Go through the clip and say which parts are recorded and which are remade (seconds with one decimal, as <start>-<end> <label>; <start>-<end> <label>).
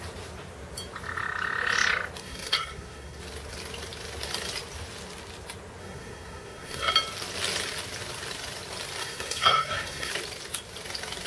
0.0-2.2 recorded; 2.2-3.2 remade; 3.2-5.8 recorded; 5.8-6.9 remade; 6.9-9.0 recorded; 9.0-10.1 remade; 10.1-11.3 recorded